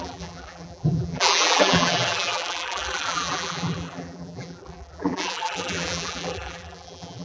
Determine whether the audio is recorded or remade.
remade